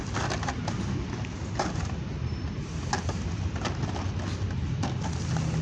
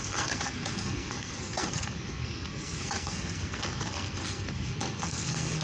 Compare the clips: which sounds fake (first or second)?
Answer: second